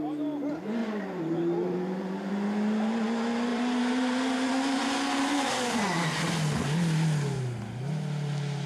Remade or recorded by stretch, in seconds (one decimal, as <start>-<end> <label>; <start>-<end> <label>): 0.0-0.8 recorded; 0.8-2.3 remade; 2.3-3.5 recorded; 3.5-5.5 remade; 5.5-8.7 recorded